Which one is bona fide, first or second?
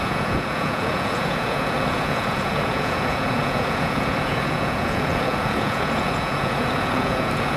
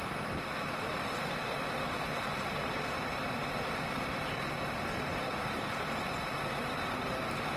second